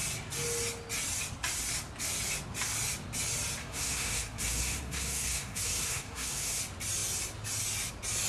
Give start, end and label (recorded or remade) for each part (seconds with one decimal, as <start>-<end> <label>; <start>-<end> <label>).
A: 0.0-3.6 recorded; 3.6-6.6 remade; 6.6-8.3 recorded